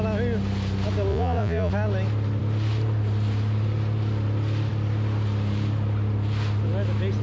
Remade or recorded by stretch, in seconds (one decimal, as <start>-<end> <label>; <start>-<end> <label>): 0.0-1.1 recorded; 1.1-1.7 remade; 1.7-7.2 recorded